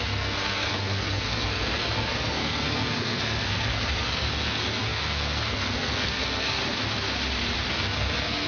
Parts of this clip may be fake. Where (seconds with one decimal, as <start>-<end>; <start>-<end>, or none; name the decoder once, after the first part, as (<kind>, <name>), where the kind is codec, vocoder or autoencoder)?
0.0-6.6 (codec, SNAC); 7.7-8.5